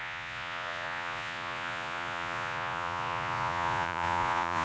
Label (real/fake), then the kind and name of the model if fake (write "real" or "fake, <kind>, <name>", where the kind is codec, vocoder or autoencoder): fake, vocoder, Vocos